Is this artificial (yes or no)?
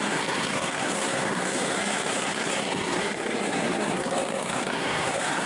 yes